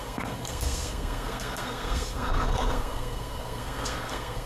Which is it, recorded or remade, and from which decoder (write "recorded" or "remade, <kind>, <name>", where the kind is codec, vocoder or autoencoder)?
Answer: remade, codec, SNAC